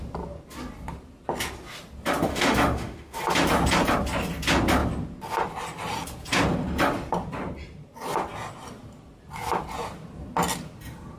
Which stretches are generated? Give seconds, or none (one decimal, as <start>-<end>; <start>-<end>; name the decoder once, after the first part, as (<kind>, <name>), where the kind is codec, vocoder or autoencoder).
2.3-3.2 (autoencoder, DAC-VAE)